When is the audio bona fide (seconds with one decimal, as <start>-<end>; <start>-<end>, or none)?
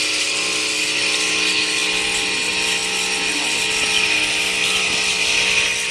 0.0-5.9